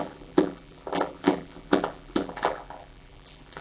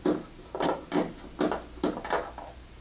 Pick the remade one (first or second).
first